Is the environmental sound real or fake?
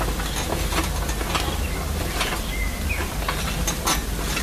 real